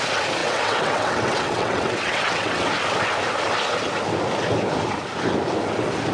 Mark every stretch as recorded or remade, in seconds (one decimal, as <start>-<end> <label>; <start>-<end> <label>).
0.0-0.4 recorded; 0.4-2.7 remade; 2.7-6.1 recorded